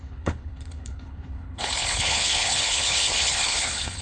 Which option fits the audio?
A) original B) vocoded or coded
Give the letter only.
B